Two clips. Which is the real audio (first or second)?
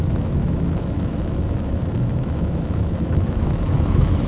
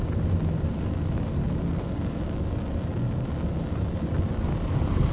second